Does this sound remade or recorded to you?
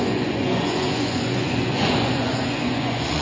remade